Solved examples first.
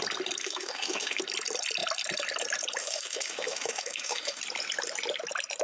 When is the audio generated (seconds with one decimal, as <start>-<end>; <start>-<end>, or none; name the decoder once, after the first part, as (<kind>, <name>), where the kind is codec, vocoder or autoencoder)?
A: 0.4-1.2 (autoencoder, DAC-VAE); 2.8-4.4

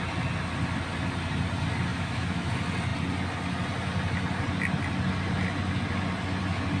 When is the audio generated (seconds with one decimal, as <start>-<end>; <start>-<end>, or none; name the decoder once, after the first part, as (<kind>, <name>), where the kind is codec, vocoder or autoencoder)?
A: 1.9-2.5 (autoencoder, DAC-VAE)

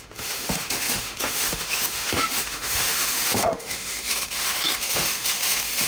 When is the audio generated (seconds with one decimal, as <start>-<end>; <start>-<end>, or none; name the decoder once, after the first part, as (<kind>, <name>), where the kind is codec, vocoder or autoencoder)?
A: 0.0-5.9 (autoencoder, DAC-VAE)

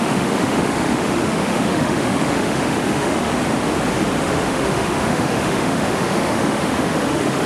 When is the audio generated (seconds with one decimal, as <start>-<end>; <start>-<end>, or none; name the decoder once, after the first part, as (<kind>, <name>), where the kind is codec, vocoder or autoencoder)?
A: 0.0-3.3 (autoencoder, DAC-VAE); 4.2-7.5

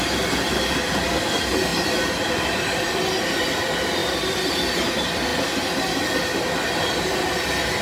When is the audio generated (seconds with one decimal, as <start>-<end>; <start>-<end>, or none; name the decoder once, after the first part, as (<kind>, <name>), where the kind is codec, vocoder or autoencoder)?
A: none